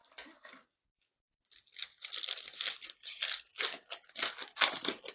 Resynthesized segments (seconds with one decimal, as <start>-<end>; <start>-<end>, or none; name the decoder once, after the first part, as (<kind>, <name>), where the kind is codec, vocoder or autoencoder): none